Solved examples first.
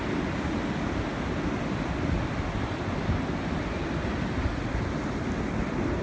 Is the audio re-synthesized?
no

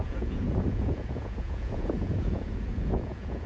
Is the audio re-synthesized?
yes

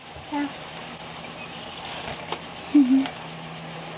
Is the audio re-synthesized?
no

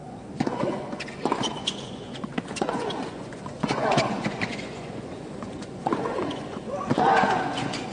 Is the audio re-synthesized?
yes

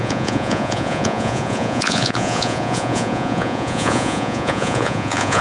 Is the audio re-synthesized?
yes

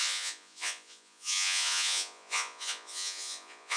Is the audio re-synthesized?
yes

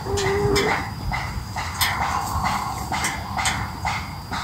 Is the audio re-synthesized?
no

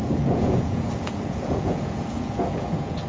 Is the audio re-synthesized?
yes